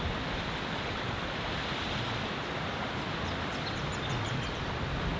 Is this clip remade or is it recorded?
recorded